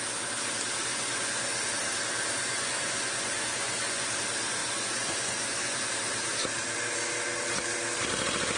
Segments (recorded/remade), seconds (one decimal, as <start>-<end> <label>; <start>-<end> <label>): 0.0-0.9 recorded; 0.9-1.7 remade; 1.7-2.4 recorded; 2.4-4.1 remade; 4.1-4.6 recorded; 4.6-5.8 remade; 5.8-8.6 recorded